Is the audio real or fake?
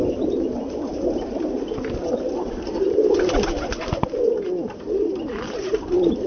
real